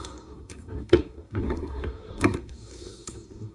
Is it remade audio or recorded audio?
remade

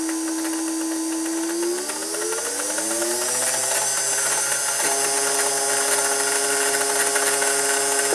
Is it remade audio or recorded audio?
recorded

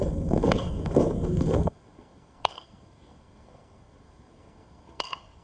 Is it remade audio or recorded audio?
remade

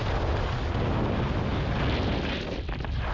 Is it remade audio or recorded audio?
recorded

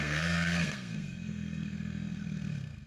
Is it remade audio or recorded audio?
remade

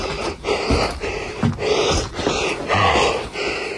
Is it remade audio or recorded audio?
recorded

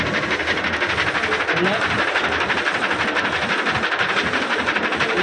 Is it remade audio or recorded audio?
recorded